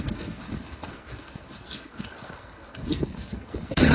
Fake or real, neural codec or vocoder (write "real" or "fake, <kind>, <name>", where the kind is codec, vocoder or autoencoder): fake, codec, SNAC